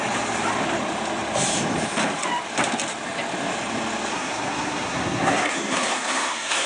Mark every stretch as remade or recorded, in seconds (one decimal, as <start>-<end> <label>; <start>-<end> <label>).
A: 0.0-4.1 recorded; 4.1-6.7 remade

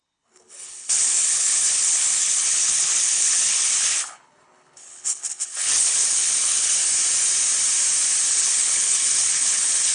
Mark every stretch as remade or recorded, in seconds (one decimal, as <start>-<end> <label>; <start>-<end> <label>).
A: 0.0-6.8 remade; 6.8-8.3 recorded; 8.3-9.9 remade

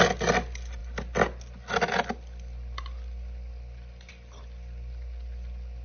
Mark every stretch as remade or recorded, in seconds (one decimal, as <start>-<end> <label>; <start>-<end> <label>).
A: 0.0-5.8 recorded